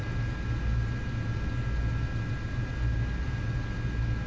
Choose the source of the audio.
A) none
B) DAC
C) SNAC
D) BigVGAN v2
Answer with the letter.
A